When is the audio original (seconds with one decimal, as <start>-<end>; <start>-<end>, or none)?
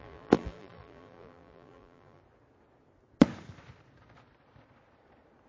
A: 2.2-5.5